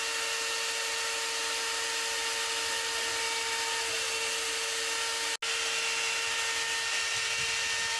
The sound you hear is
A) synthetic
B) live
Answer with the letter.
B